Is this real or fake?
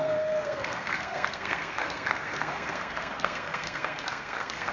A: fake